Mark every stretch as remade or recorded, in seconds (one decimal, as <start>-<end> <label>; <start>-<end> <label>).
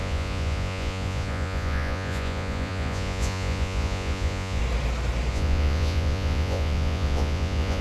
0.0-4.6 remade; 4.6-5.3 recorded; 5.3-7.8 remade